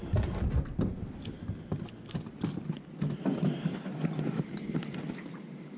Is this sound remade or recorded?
recorded